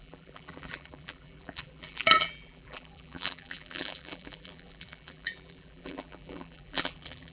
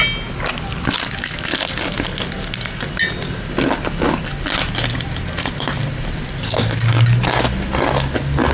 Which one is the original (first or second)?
second